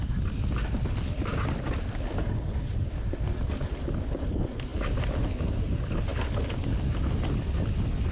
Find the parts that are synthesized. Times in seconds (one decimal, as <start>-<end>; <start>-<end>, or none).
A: 1.3-4.3; 4.7-5.4; 6.1-7.5